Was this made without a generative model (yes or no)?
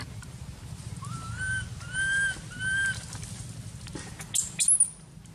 yes